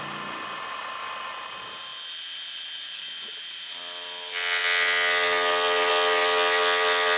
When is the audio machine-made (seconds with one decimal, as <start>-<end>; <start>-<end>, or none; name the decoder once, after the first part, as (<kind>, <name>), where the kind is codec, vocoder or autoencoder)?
none

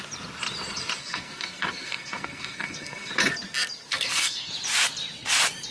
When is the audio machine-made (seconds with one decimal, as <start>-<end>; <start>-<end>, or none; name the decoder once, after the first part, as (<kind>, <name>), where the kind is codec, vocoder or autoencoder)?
1.0-3.1 (codec, SNAC); 3.9-4.5

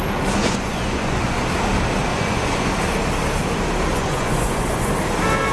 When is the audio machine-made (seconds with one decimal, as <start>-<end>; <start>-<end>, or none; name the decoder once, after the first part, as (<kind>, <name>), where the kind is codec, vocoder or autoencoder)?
0.4-1.5 (vocoder, Vocos); 2.1-2.7; 3.9-4.9

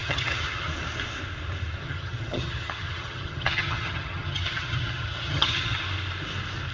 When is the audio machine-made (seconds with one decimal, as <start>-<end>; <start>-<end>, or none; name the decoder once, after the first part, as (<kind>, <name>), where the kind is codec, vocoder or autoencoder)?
0.0-0.7 (vocoder, HiFi-GAN); 1.8-5.8

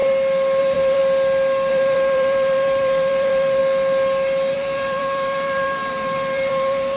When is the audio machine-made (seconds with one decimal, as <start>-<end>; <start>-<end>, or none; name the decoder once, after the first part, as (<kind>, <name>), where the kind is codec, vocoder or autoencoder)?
0.6-1.0 (vocoder, BigVGAN v2); 1.7-3.6; 4.5-7.0

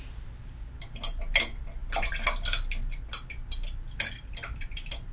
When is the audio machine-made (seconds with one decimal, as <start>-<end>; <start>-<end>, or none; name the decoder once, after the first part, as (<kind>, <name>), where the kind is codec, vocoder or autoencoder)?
none

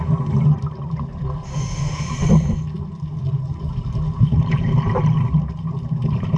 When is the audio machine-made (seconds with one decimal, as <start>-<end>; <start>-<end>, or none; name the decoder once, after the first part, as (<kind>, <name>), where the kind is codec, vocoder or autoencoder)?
1.5-2.1 (autoencoder, DAC-VAE)